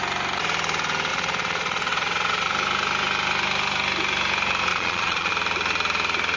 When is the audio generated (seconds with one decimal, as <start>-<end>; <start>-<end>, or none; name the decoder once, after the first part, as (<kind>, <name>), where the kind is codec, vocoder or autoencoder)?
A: 1.1-2.5 (vocoder, Vocos); 4.7-5.3